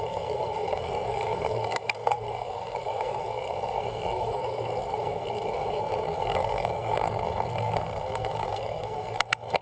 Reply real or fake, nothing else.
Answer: fake